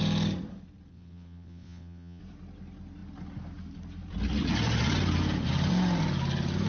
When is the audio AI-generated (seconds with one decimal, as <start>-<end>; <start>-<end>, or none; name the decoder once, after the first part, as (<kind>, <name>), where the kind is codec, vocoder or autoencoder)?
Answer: 0.9-2.2 (vocoder, WaveNeXt)